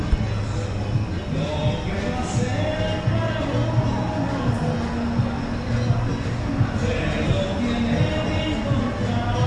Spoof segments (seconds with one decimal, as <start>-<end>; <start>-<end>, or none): none